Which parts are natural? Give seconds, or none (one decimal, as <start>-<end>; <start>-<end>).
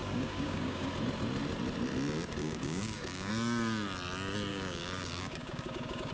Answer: 0.9-2.4; 3.3-4.5